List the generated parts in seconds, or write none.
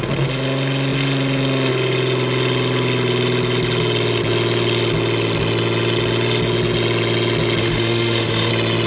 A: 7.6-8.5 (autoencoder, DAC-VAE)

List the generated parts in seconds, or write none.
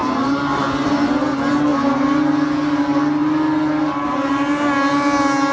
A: 0.0-1.2 (vocoder, BigVGAN v2)